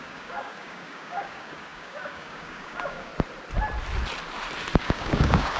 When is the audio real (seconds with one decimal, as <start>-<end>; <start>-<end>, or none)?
3.1-4.8